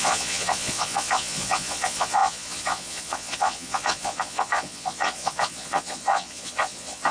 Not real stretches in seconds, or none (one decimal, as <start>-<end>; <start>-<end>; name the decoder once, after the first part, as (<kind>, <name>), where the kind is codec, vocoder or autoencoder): 0.0-7.1 (vocoder, Vocos)